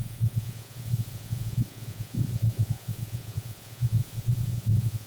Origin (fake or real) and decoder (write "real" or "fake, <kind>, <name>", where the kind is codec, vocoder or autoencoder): fake, vocoder, Vocos